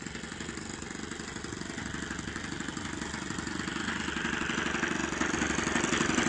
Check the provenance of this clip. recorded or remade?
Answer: recorded